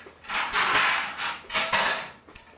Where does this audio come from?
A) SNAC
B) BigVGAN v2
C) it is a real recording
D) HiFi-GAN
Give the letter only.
C